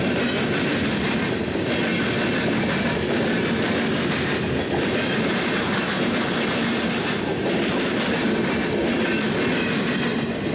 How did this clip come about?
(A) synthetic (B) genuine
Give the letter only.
B